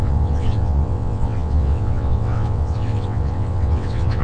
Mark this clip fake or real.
fake